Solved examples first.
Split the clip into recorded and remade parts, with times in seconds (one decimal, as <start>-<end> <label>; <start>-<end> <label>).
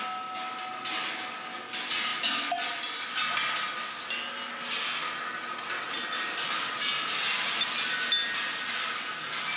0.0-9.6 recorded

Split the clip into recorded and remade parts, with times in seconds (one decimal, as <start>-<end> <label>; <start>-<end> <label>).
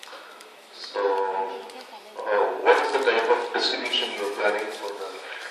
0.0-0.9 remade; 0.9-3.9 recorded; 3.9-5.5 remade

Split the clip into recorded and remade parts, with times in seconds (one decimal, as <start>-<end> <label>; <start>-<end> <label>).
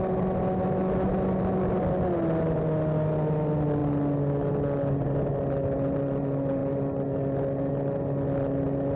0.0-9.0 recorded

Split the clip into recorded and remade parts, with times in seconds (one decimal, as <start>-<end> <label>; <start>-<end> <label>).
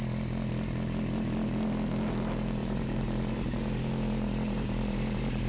0.0-2.6 recorded; 2.6-5.5 remade